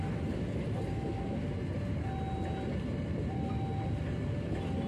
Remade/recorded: recorded